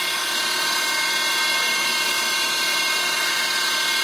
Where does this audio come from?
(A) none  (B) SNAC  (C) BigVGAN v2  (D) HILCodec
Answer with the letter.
A